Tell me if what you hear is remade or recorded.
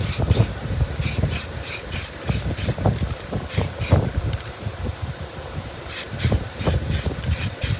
remade